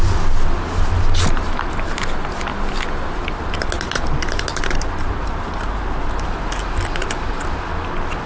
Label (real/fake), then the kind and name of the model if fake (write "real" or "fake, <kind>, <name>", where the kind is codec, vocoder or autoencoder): real